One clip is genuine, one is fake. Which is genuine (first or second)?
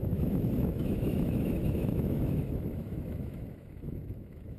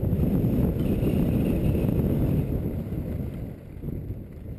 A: second